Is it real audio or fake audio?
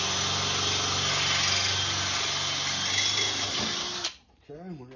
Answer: real